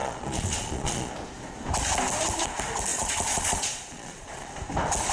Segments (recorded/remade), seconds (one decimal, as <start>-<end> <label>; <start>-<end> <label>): 0.0-1.1 remade; 1.1-2.9 recorded; 2.9-4.5 remade; 4.5-5.1 recorded